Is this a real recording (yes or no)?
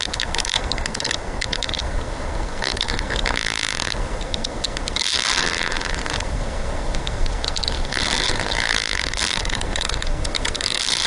no